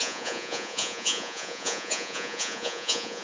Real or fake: fake